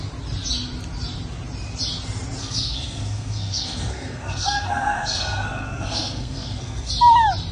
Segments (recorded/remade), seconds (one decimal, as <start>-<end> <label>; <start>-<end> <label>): 0.0-2.4 recorded; 2.4-6.9 remade; 6.9-7.5 recorded